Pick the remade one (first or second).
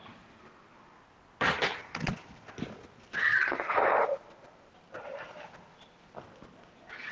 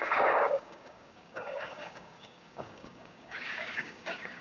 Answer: second